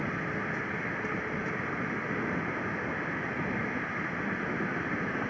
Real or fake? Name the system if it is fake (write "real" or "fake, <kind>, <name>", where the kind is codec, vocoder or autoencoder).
real